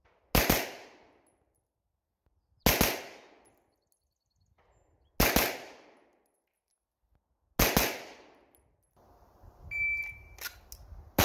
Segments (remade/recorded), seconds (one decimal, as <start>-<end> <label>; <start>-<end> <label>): 0.0-11.2 recorded